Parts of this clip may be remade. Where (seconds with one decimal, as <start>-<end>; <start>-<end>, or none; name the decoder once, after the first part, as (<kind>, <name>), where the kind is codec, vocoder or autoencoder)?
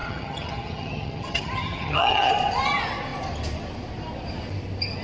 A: 0.0-2.3 (vocoder, HiFi-GAN)